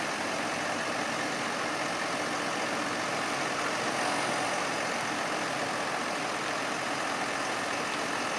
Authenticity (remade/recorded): recorded